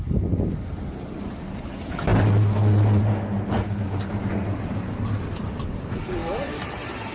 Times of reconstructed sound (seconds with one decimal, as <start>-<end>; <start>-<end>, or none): none